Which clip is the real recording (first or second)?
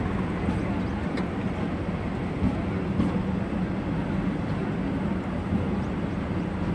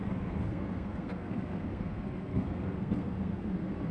first